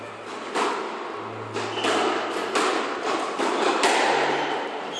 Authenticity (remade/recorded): recorded